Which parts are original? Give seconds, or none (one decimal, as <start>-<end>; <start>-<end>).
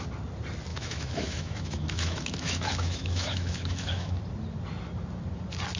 0.0-0.7; 4.2-5.8